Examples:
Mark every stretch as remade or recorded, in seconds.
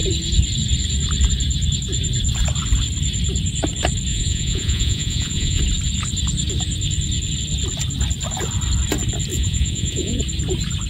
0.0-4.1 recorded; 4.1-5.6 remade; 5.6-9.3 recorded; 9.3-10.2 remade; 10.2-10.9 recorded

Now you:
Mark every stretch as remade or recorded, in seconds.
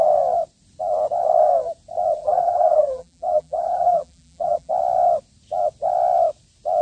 0.0-2.2 recorded; 2.2-4.7 remade; 4.7-6.8 recorded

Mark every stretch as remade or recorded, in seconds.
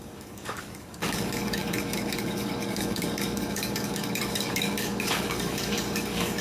0.0-6.4 remade